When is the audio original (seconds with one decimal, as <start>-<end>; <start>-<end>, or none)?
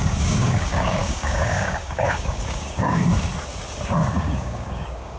3.0-4.2